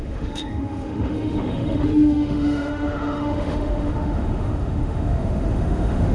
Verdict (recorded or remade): remade